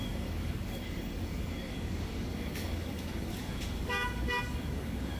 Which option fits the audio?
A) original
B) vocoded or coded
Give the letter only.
B